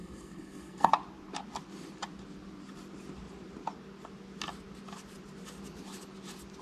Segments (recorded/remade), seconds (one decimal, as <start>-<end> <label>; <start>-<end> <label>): 0.0-0.9 remade; 0.9-6.6 recorded